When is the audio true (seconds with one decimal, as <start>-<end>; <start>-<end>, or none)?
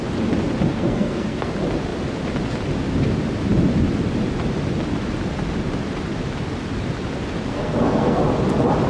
0.0-0.7; 1.5-7.5; 8.2-8.9